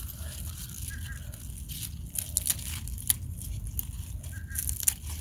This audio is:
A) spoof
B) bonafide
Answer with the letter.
B